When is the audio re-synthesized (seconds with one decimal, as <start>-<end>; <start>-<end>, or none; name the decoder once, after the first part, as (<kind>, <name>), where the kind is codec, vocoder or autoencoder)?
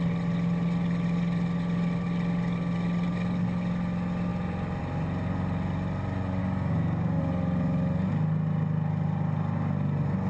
6.4-7.2 (codec, DAC)